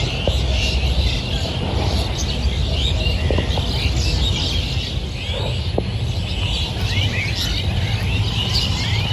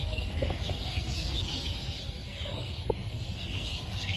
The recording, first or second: first